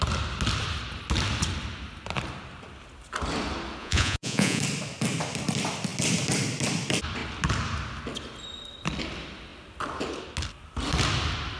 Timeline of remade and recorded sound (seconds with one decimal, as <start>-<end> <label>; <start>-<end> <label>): 0.0-3.8 recorded; 3.8-4.6 remade; 4.6-11.6 recorded